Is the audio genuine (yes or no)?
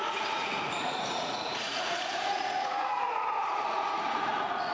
no